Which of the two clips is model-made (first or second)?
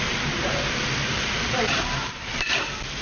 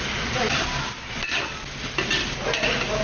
first